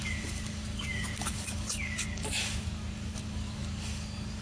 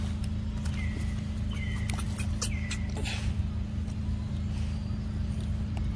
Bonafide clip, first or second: second